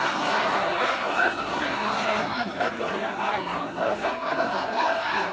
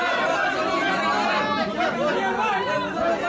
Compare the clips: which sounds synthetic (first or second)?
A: first